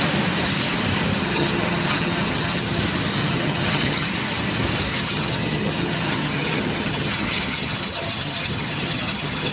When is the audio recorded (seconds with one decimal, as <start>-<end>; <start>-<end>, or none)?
0.0-1.2; 2.8-3.2; 4.1-4.9